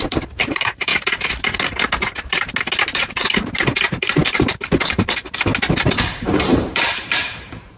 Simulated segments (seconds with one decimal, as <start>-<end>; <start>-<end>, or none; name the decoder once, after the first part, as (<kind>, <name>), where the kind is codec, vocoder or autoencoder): 0.0-0.9 (vocoder, BigVGAN v2); 4.9-5.5; 6.2-7.8